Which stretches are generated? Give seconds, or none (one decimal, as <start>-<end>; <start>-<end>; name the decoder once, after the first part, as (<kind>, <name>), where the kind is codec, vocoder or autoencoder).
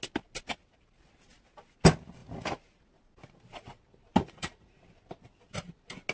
4.2-4.8 (vocoder, Vocos)